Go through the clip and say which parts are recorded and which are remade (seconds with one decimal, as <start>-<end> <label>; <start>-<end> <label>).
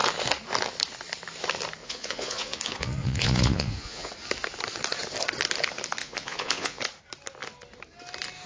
0.0-1.8 recorded; 1.8-4.1 remade; 4.1-6.0 recorded; 6.0-6.8 remade; 6.8-8.5 recorded